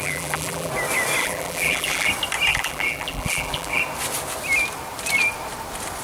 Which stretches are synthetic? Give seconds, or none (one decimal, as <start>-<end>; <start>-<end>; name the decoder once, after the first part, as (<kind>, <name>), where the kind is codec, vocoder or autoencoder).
0.0-0.7 (vocoder, BigVGAN v2); 1.2-2.1; 2.5-3.8